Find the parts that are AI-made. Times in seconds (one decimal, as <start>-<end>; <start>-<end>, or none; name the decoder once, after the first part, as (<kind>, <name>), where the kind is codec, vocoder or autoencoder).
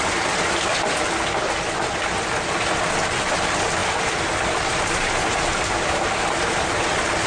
none